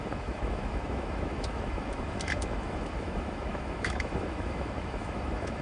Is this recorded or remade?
remade